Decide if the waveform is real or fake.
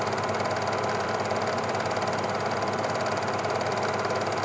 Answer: real